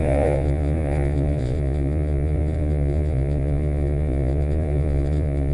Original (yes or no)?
no